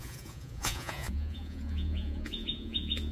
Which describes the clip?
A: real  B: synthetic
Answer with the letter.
B